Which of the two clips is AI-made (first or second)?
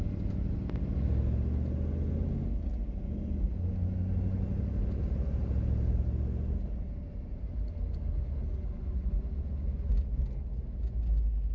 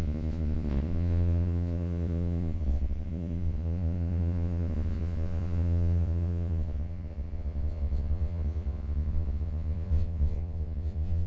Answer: second